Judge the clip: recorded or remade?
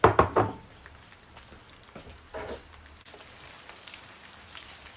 recorded